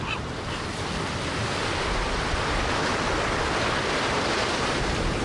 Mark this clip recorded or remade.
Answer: recorded